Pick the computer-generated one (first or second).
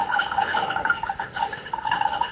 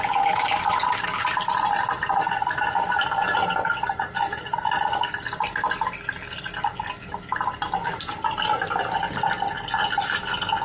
first